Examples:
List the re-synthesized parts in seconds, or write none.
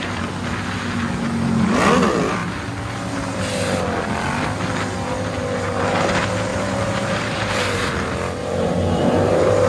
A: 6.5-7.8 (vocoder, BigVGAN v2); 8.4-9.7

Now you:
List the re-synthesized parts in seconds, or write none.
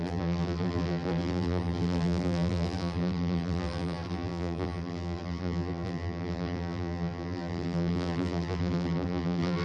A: 0.0-9.6 (vocoder, BigVGAN v2)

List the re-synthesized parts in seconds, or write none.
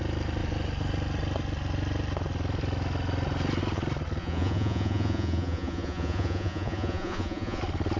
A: 4.2-7.6 (vocoder, Vocos)